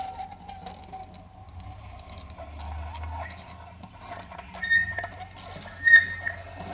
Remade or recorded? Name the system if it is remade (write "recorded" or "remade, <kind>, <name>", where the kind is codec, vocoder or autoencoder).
recorded